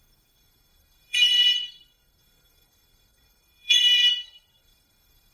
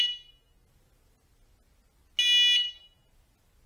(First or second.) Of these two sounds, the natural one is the second